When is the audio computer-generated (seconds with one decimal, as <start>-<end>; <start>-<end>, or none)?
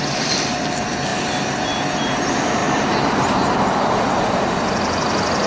none